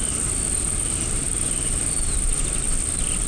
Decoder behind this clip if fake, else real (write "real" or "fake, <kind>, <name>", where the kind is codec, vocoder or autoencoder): real